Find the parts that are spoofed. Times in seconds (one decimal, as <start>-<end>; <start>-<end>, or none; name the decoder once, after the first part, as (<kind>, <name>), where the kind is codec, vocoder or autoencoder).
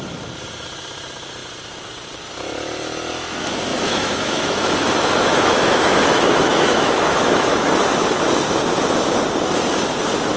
3.7-8.2 (autoencoder, DAC-VAE)